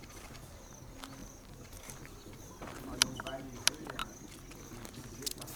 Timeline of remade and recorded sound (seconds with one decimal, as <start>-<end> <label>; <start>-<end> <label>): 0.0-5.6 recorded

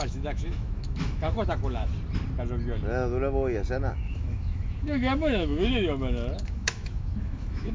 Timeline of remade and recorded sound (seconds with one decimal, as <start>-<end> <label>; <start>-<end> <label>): 0.0-1.9 remade; 1.9-3.9 recorded; 3.9-7.7 remade

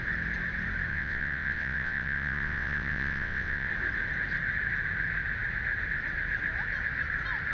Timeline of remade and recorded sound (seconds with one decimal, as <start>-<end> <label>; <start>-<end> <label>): 0.0-0.9 recorded; 0.9-3.7 remade; 3.7-7.5 recorded

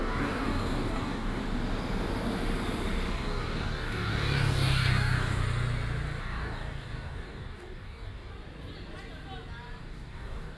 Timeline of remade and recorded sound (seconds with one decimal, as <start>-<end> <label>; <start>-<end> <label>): 0.0-1.4 remade; 1.4-3.1 recorded; 3.1-5.4 remade; 5.4-6.2 recorded; 6.2-8.3 remade; 8.3-9.8 recorded; 9.8-10.6 remade

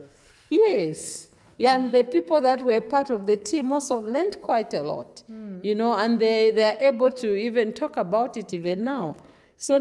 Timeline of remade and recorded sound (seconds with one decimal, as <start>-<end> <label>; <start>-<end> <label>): 0.0-4.5 remade; 4.5-6.5 recorded; 6.5-7.2 remade; 7.2-8.5 recorded; 8.5-9.8 remade